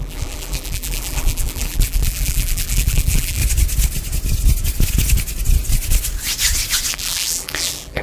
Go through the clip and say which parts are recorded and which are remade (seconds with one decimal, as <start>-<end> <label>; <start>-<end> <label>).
0.0-3.4 remade; 3.4-6.9 recorded; 6.9-8.0 remade